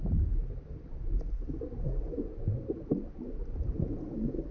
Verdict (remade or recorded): recorded